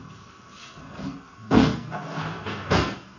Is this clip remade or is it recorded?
remade